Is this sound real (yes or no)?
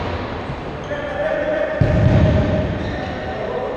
yes